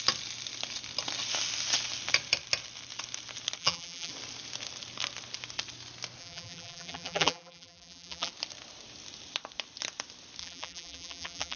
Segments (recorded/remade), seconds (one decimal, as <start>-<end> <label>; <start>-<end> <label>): 0.0-3.6 recorded; 3.6-4.1 remade; 4.1-6.2 recorded; 6.2-8.3 remade; 8.3-10.4 recorded; 10.4-11.6 remade